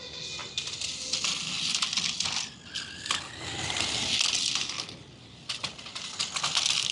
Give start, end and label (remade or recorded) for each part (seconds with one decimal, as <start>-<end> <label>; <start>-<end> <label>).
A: 0.0-6.9 recorded